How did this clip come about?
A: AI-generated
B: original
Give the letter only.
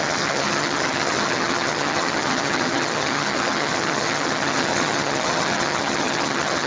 A